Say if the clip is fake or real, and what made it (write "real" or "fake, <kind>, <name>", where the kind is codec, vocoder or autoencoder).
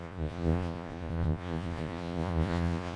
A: fake, vocoder, Vocos